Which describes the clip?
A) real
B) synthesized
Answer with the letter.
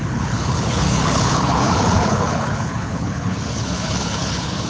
B